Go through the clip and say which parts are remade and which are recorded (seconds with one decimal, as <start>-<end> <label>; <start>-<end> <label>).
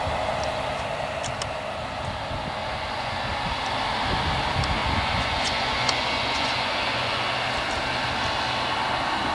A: 0.0-2.6 recorded; 2.6-3.2 remade; 3.2-4.8 recorded; 4.8-7.3 remade; 7.3-9.3 recorded